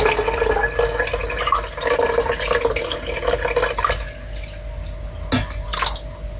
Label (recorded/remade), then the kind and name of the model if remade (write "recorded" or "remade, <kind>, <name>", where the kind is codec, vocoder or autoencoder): recorded